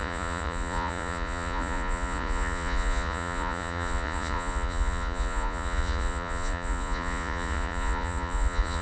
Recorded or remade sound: remade